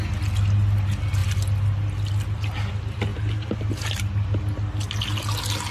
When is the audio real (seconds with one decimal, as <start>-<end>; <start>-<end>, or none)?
0.0-5.7